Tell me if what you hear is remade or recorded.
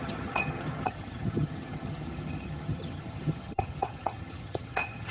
remade